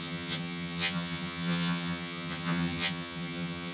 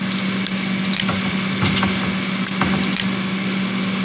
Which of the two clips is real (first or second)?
second